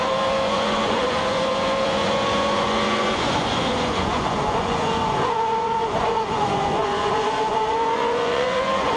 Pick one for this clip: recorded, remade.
remade